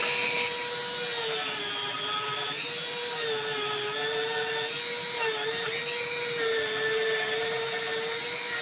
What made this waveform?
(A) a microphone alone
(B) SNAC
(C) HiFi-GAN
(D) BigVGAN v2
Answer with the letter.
A